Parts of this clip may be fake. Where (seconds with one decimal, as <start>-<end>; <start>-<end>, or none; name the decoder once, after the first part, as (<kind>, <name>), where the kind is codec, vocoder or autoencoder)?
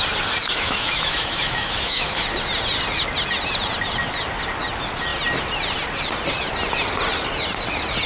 0.4-2.2 (autoencoder, DAC-VAE)